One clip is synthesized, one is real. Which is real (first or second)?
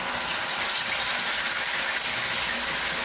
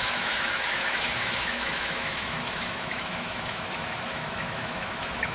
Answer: first